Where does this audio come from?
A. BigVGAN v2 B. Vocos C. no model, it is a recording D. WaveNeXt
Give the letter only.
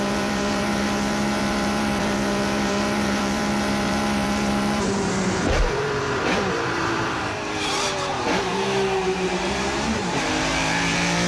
A